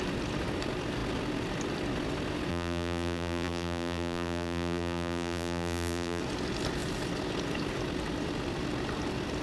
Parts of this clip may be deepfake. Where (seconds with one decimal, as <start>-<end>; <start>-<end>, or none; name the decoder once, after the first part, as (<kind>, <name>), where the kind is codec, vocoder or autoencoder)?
2.5-6.2 (vocoder, BigVGAN v2)